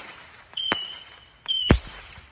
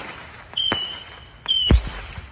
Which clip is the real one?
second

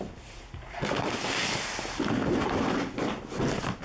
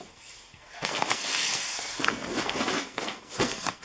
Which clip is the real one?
first